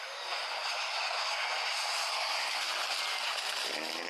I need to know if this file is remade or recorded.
recorded